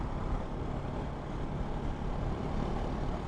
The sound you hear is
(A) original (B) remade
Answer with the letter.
A